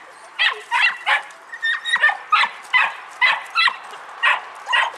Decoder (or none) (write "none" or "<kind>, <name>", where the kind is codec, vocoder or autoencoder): none